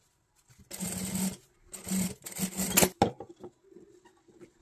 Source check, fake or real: real